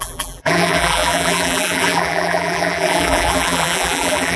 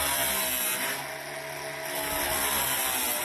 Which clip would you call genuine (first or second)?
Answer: second